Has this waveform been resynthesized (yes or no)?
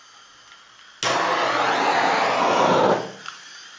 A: no